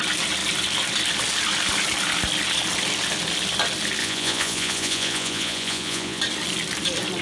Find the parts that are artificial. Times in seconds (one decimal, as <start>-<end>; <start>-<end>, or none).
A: 4.0-6.2